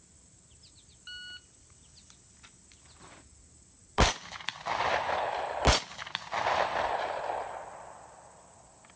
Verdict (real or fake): real